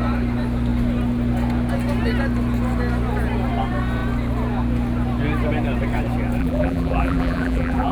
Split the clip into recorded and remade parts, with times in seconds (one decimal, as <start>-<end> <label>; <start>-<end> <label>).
0.0-6.4 recorded; 6.4-7.9 remade